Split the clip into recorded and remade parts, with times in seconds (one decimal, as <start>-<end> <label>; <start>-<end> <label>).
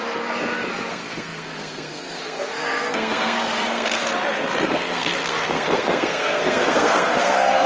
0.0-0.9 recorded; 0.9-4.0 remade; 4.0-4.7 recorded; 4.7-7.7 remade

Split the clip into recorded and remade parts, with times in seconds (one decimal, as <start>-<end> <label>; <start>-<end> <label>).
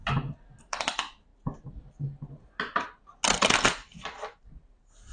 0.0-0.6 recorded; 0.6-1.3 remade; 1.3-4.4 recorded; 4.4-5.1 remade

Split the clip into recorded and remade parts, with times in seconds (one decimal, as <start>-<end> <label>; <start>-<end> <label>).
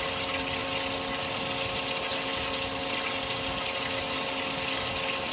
0.0-5.3 recorded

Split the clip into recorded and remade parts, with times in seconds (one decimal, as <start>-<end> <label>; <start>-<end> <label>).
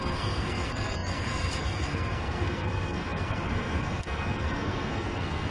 0.0-5.5 remade